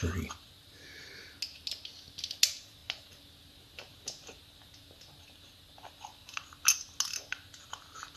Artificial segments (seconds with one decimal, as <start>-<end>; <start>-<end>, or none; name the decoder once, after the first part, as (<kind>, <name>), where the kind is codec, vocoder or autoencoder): none